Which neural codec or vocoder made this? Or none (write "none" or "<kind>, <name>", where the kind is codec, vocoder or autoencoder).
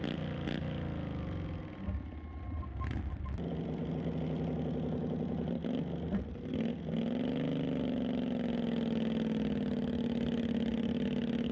none